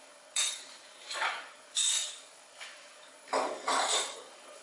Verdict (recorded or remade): remade